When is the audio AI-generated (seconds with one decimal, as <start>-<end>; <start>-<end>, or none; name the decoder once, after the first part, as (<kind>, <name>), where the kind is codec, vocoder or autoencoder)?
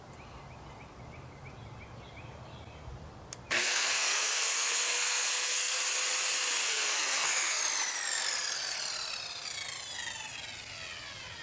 3.6-5.8 (codec, SNAC); 6.6-7.6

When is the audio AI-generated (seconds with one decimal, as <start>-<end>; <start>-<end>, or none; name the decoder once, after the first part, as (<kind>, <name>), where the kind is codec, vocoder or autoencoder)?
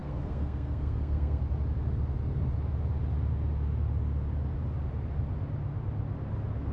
0.0-1.4 (codec, SNAC)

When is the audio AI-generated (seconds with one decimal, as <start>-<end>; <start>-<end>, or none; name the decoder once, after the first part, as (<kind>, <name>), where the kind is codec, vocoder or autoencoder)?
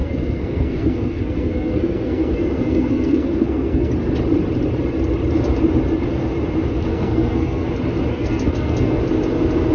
0.0-3.9 (codec, SNAC); 6.9-7.7; 8.1-9.0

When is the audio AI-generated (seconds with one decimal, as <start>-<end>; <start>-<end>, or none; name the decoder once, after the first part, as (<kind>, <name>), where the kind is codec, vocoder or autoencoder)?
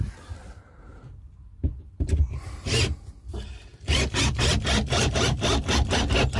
none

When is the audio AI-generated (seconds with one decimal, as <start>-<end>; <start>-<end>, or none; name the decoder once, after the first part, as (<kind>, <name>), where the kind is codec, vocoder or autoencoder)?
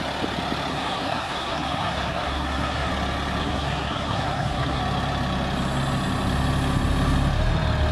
0.7-2.9 (codec, SNAC); 3.4-4.8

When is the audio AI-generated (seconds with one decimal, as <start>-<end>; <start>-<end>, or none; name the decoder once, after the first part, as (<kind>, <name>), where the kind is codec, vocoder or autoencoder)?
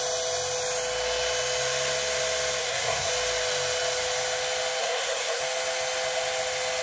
2.6-3.1 (codec, SNAC); 4.8-5.4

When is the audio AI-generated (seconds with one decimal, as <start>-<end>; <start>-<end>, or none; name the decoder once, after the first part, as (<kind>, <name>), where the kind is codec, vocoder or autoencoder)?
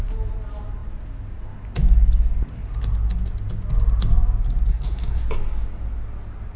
4.7-5.2 (codec, SNAC)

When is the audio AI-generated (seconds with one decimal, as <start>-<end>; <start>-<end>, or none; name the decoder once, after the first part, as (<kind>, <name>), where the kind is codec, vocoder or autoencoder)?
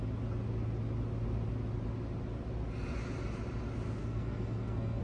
4.0-5.0 (codec, SNAC)